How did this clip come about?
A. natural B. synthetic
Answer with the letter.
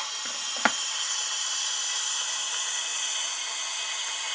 A